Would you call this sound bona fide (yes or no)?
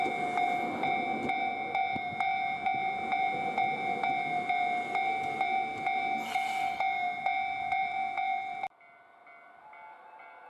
yes